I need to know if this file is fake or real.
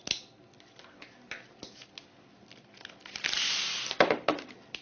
real